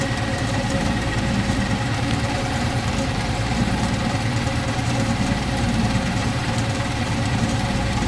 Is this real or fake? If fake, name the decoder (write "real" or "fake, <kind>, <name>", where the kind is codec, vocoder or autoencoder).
fake, vocoder, BigVGAN v2